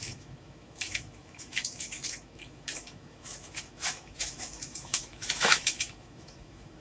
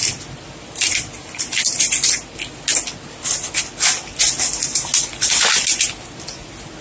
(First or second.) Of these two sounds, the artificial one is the first